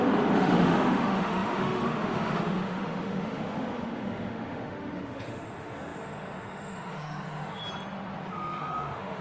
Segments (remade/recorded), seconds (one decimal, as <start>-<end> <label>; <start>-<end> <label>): 0.0-7.6 remade; 7.6-8.3 recorded; 8.3-9.2 remade